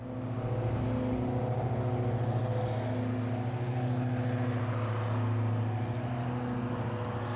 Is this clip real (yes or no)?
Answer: yes